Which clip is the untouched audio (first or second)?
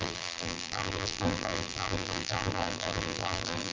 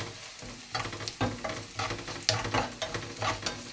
second